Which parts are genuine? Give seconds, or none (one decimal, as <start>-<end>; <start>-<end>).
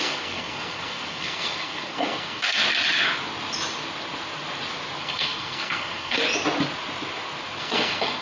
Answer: 2.6-5.0; 6.2-7.6